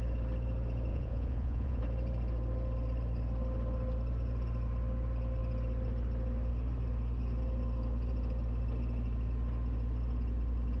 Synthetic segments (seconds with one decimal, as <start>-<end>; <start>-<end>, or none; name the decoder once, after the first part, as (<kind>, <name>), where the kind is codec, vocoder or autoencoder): 0.9-1.8 (vocoder, Vocos)